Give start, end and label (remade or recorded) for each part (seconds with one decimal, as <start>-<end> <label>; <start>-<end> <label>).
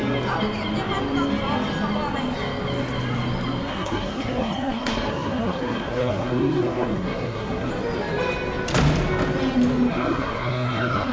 0.0-3.7 recorded; 3.7-7.7 remade; 7.7-9.9 recorded; 9.9-11.1 remade